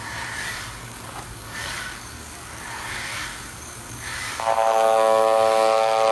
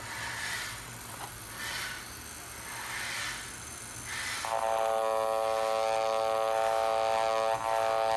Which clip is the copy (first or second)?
first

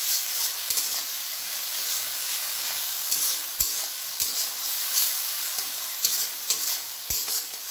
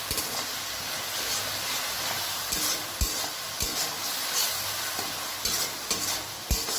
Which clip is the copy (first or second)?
first